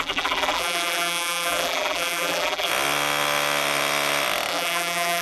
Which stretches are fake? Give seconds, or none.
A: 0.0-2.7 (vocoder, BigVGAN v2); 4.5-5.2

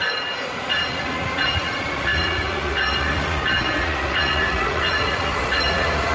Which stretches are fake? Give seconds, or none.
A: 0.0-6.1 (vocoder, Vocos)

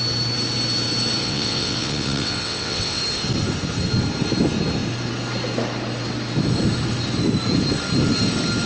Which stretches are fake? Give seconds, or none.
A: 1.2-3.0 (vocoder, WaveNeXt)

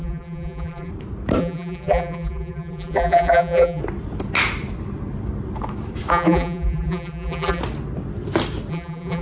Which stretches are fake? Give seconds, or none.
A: 0.0-0.9 (vocoder, BigVGAN v2); 1.4-3.8; 6.1-7.6; 8.7-9.2

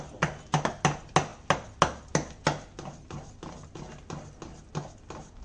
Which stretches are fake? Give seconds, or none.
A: none

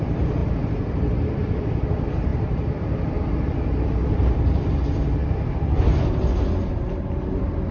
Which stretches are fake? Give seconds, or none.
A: 0.0-5.2 (vocoder, BigVGAN v2); 6.7-7.7

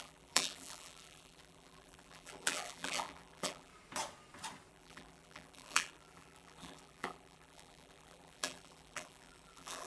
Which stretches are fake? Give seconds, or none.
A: 0.0-3.7 (vocoder, BigVGAN v2); 4.7-9.9

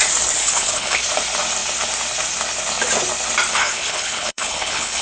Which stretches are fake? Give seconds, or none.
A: 0.4-1.0 (codec, HILCodec); 3.5-5.0